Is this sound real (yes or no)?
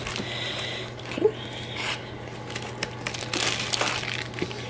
yes